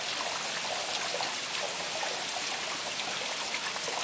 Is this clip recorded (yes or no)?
yes